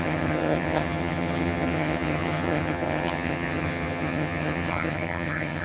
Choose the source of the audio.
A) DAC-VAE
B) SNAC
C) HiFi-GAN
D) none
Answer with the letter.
C